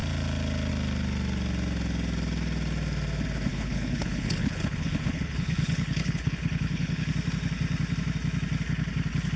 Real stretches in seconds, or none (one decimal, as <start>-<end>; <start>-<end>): 0.0-3.5; 7.1-9.4